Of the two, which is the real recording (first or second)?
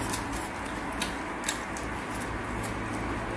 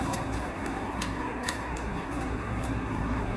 first